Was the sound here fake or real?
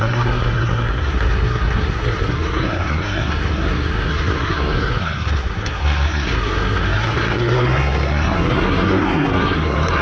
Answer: fake